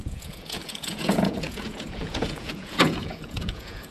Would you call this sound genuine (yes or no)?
no